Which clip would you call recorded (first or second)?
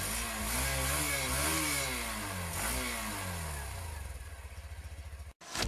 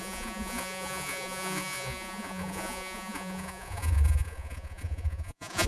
first